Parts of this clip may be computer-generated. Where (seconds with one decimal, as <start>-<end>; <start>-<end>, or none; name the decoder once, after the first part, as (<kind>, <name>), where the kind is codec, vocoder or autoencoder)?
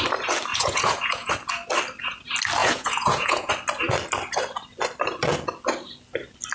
0.5-1.3 (vocoder, Vocos); 2.6-3.5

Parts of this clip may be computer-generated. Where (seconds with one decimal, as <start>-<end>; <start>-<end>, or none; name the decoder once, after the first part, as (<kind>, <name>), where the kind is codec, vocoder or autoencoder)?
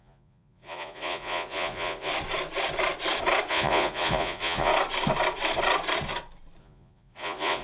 0.0-2.1 (vocoder, Vocos); 3.5-4.7; 6.6-7.6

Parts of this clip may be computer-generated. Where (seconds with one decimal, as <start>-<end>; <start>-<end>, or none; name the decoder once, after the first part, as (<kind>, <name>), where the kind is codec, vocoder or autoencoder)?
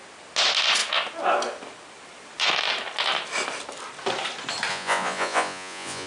4.7-6.1 (vocoder, Vocos)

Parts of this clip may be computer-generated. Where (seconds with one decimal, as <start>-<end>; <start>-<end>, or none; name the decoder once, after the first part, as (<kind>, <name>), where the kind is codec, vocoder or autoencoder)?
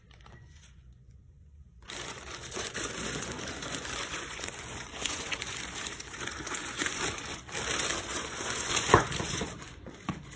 0.0-7.4 (vocoder, Vocos); 8.0-10.4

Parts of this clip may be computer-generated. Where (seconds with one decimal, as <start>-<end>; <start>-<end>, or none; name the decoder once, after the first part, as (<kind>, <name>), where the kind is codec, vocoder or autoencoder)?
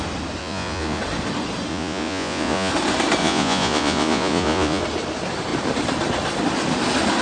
0.4-1.0 (vocoder, Vocos); 1.7-2.7; 3.2-4.8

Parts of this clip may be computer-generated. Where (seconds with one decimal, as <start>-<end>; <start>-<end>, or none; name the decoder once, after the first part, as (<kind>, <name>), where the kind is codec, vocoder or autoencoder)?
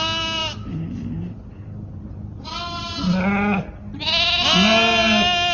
none